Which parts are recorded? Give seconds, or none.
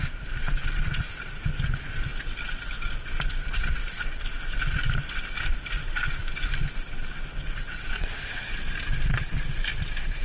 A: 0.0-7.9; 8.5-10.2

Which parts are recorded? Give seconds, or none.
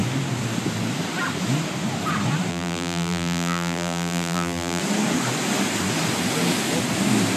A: 0.0-2.5; 4.8-7.4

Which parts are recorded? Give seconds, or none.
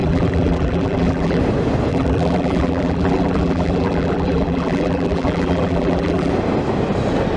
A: 1.4-1.9; 6.3-7.4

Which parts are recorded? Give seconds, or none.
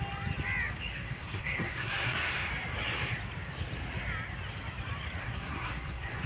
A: 0.0-0.9; 2.5-5.2